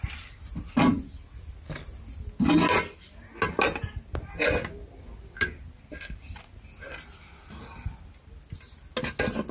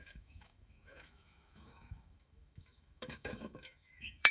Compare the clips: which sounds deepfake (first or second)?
second